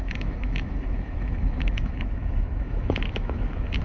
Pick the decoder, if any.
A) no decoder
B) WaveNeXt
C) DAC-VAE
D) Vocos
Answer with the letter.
C